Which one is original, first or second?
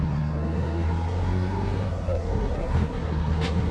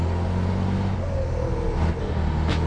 second